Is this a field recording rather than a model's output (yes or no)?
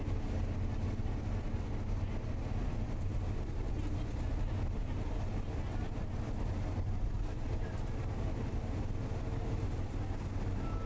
yes